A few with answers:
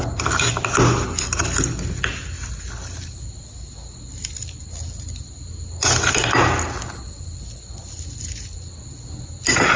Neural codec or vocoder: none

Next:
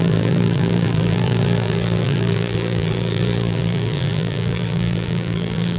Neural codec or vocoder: vocoder, BigVGAN v2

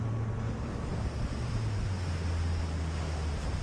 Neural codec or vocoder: none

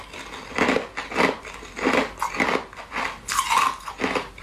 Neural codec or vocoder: none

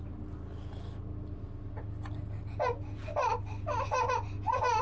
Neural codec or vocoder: none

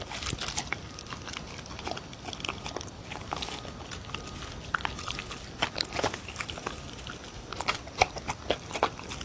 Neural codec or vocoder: none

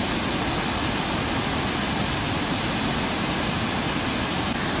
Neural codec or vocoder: none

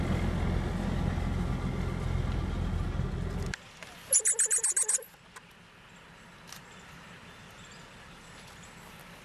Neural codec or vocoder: none